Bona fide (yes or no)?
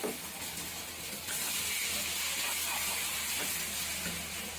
yes